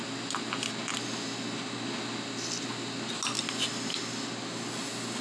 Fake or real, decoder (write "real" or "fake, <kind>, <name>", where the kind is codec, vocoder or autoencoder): real